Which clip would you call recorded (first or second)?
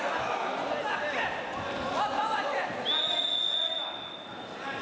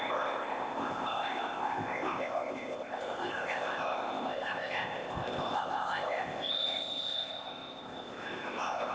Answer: first